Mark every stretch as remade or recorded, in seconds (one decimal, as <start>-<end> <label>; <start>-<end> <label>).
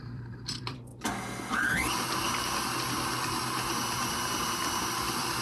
0.0-0.9 remade; 0.9-4.1 recorded; 4.1-5.4 remade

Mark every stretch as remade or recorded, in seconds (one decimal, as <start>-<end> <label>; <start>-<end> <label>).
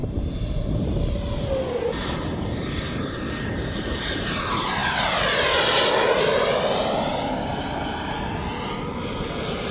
0.0-1.1 remade; 1.1-2.0 recorded; 2.0-4.0 remade; 4.0-9.7 recorded